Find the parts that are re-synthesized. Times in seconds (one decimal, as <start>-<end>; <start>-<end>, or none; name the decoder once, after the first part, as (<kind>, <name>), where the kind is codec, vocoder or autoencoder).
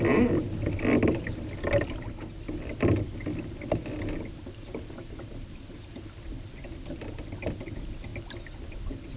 none